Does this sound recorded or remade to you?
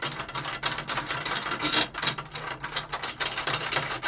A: recorded